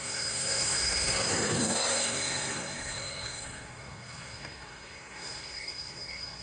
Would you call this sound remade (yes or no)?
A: yes